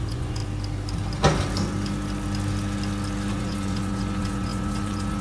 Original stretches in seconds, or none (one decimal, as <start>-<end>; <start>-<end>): 0.4-3.3